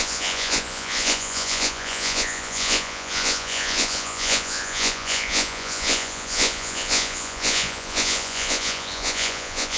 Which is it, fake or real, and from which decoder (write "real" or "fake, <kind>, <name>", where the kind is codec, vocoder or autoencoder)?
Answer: fake, vocoder, Vocos